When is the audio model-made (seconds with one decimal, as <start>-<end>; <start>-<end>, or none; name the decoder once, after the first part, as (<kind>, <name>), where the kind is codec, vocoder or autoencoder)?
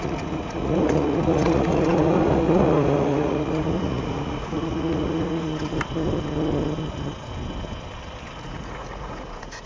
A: 0.0-5.5 (vocoder, Vocos); 8.4-9.7